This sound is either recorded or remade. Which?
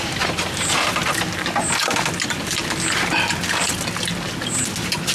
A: recorded